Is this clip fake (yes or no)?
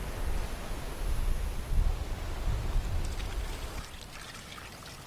no